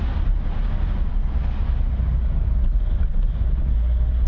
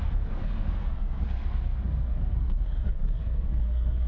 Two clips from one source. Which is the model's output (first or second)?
second